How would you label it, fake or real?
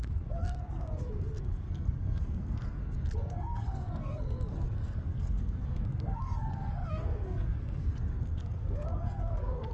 fake